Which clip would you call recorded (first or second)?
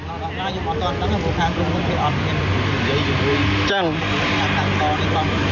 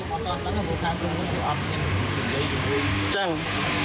first